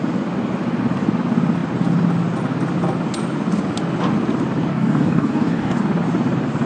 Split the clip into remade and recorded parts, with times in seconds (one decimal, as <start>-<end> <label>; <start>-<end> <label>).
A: 0.0-4.7 recorded; 4.7-5.8 remade; 5.8-6.7 recorded